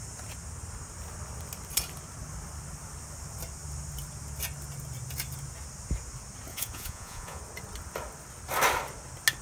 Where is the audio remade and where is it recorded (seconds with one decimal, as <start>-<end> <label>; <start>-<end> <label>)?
0.0-6.5 recorded; 6.5-7.4 remade; 7.4-9.4 recorded

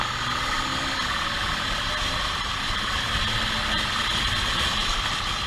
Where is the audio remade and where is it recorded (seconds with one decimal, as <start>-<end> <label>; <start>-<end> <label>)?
0.0-5.5 recorded

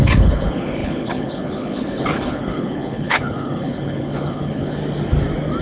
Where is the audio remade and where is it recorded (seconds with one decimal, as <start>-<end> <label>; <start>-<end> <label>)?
0.0-4.8 remade; 4.8-5.6 recorded